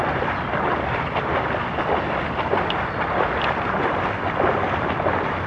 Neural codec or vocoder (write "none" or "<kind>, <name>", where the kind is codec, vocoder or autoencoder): none